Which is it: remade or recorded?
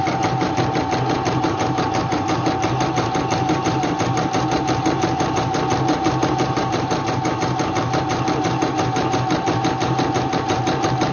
remade